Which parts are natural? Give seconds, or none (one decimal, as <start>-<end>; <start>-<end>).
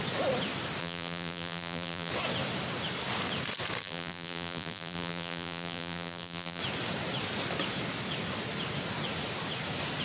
0.0-0.8; 2.1-3.8; 6.6-10.0